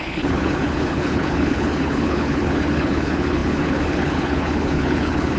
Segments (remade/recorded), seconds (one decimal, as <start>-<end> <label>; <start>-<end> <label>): 0.0-5.4 remade